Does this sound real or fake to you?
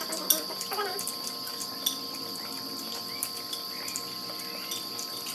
real